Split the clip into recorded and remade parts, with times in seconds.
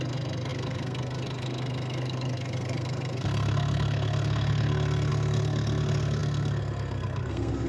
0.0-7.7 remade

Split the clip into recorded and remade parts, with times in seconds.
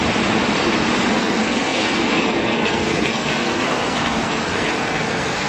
0.0-1.2 recorded; 1.2-5.5 remade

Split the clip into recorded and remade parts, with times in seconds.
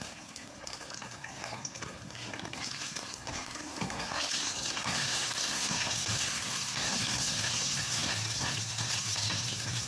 0.0-9.9 remade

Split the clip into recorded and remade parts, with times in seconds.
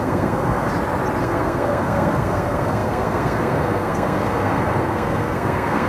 0.0-0.7 remade; 0.7-1.2 recorded; 1.2-5.9 remade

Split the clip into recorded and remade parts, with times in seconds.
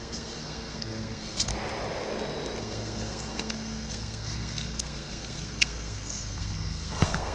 0.0-1.5 remade; 1.5-2.6 recorded; 2.6-7.3 remade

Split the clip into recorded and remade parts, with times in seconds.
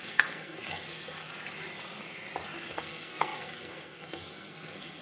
0.0-1.3 remade; 1.3-2.7 recorded; 2.7-5.0 remade